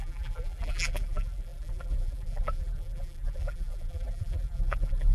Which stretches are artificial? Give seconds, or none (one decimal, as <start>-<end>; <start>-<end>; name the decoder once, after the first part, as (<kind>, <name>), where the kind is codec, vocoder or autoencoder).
0.0-5.1 (vocoder, BigVGAN v2)